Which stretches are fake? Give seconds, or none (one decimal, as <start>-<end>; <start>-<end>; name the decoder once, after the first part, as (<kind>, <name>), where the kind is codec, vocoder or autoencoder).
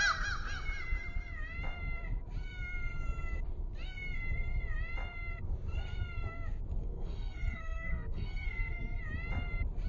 6.8-9.0 (codec, SNAC)